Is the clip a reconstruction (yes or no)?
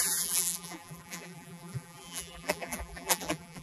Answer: yes